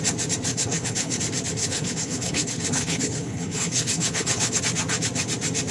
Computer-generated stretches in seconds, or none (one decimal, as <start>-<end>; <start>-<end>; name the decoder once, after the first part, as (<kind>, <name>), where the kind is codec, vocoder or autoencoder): 0.5-1.2 (codec, HILCodec); 1.6-4.6